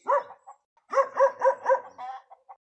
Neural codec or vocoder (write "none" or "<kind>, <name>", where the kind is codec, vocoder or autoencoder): none